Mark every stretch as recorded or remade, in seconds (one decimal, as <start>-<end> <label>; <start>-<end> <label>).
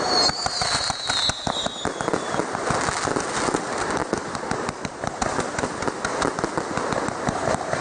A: 0.0-7.8 recorded